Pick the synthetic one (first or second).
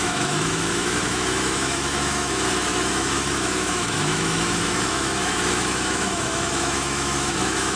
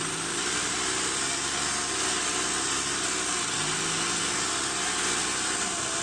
first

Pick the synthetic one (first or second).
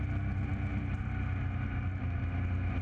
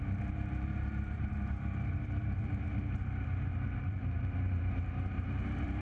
second